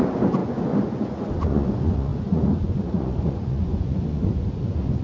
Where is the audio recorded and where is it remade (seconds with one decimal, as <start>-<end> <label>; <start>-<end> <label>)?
0.0-5.0 remade